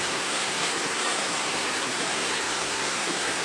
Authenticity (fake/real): fake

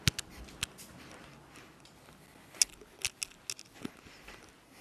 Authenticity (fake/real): real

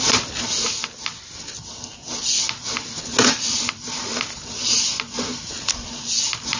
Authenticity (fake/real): real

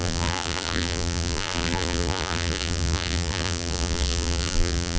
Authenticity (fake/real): fake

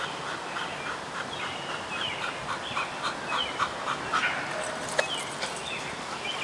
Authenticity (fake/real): real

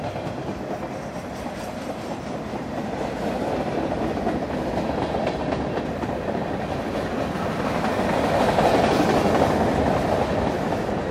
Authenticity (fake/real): real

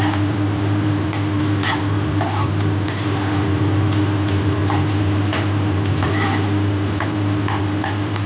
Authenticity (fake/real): real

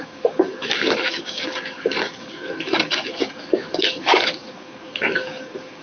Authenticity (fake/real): fake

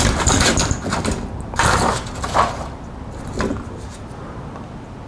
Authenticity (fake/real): real